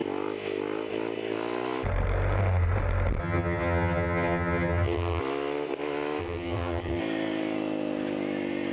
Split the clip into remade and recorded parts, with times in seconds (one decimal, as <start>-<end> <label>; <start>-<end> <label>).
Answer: 0.0-3.2 recorded; 3.2-5.2 remade; 5.2-6.2 recorded; 6.2-7.0 remade; 7.0-8.7 recorded